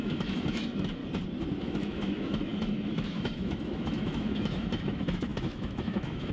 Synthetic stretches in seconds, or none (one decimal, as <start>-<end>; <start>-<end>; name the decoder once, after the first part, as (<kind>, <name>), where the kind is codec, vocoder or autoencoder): 0.0-1.0 (autoencoder, DAC-VAE); 1.6-6.3